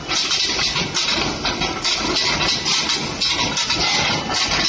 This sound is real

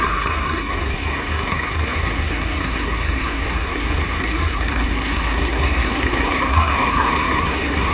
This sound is fake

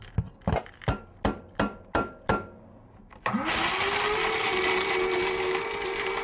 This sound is real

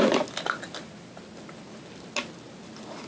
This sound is real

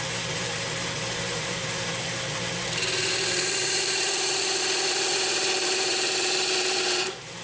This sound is fake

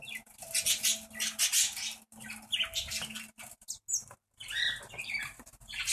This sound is real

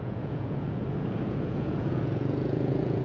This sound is fake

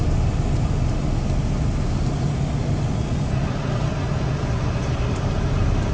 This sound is real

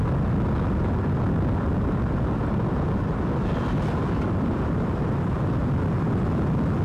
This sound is real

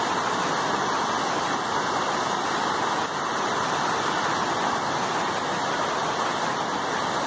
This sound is fake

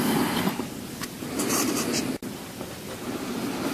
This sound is real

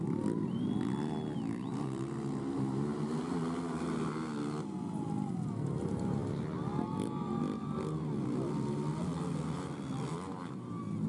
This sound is real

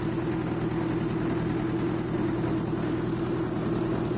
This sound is real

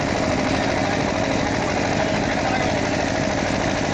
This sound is real